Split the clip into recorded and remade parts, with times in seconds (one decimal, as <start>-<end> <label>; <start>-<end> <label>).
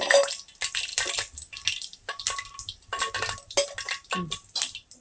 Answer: 0.0-5.0 recorded